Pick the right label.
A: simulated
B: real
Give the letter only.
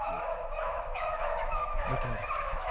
A